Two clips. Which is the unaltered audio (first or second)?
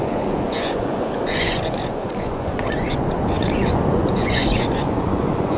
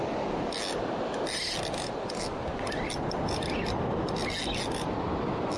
second